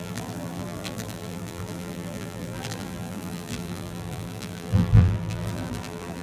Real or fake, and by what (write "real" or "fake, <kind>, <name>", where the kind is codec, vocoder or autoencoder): fake, vocoder, BigVGAN v2